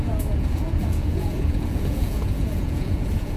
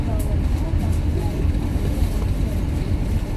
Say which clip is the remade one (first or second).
first